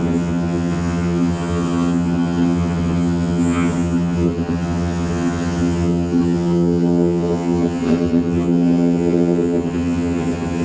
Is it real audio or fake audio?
fake